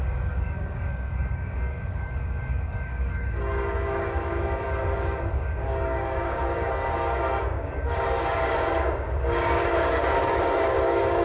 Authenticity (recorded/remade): remade